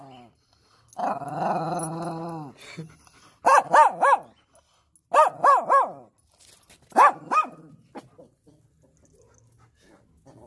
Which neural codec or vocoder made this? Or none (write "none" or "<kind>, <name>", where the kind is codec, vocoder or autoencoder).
none